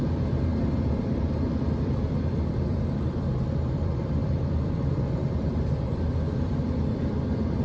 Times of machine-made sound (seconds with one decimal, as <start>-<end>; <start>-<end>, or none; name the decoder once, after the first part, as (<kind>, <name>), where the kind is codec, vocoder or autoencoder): 0.0-7.6 (vocoder, BigVGAN v2)